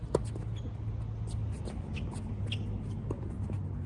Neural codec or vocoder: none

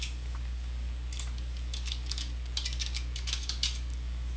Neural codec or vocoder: codec, DAC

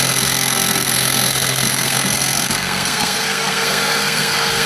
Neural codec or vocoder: codec, SNAC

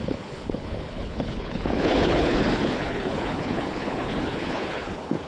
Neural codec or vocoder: codec, HILCodec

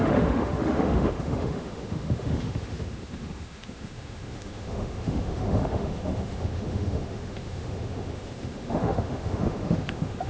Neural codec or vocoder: autoencoder, DAC-VAE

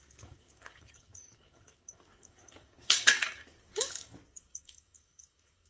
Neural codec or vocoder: codec, DAC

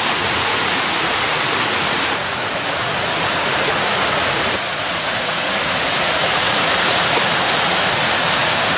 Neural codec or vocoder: vocoder, Vocos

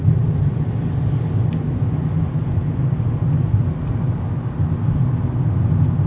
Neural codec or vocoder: none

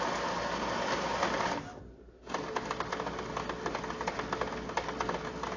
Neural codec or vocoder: none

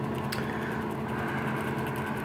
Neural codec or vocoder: none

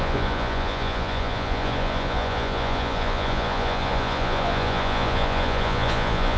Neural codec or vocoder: vocoder, Vocos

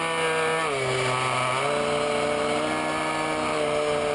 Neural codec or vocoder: none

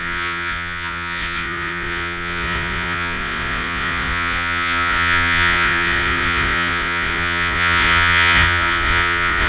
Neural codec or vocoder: vocoder, Vocos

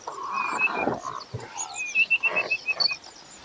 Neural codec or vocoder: none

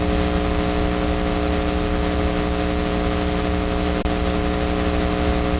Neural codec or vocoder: none